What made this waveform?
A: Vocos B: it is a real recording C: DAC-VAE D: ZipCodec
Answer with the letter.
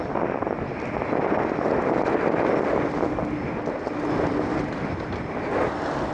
B